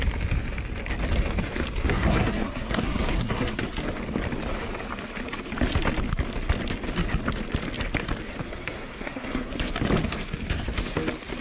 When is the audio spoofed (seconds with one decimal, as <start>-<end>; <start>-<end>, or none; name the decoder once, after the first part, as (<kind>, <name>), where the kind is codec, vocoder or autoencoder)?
1.8-3.6 (codec, SNAC); 8.4-9.7